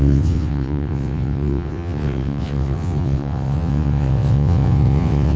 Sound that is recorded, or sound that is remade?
remade